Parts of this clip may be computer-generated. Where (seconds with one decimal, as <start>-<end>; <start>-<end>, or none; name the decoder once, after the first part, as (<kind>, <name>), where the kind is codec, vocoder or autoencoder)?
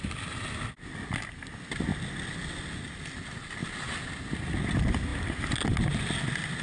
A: none